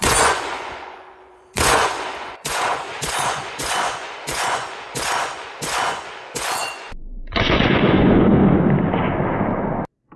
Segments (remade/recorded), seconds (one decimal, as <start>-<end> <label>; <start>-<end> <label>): 0.0-8.4 remade; 8.4-10.2 recorded